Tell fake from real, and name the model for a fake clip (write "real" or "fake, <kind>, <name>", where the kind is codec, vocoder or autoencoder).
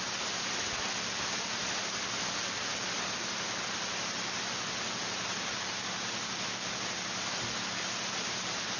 real